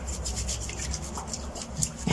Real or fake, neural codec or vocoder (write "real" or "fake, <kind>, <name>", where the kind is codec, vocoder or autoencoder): real